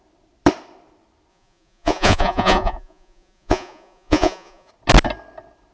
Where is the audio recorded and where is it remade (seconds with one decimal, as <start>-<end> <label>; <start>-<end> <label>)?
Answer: 0.0-1.3 recorded; 1.3-4.7 remade; 4.7-5.7 recorded